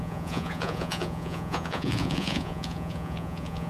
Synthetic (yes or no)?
yes